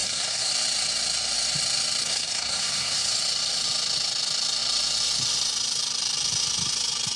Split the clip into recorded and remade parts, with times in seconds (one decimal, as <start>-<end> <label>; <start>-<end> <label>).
0.0-0.5 remade; 0.5-2.0 recorded; 2.0-3.1 remade; 3.1-7.2 recorded